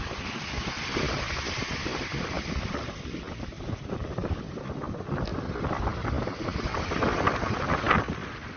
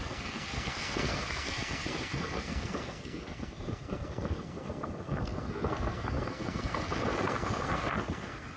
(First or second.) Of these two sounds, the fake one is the second